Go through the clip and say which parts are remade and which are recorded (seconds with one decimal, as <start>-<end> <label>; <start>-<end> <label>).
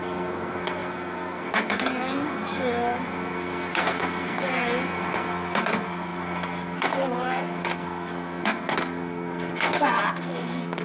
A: 0.0-10.8 remade